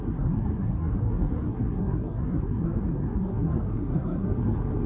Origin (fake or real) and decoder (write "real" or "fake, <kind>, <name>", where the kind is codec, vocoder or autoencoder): fake, codec, SNAC